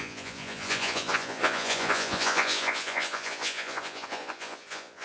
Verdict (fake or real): fake